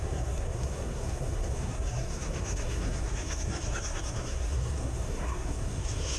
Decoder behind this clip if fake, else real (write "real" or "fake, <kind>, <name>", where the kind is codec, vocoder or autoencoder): fake, codec, SNAC